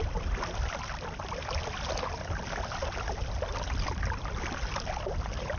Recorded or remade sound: recorded